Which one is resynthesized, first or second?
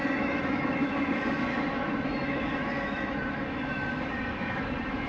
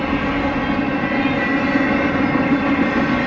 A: first